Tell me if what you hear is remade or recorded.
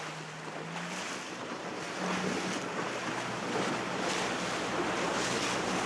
recorded